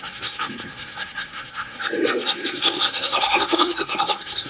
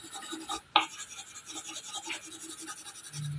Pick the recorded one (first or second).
second